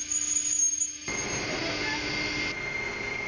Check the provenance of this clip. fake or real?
real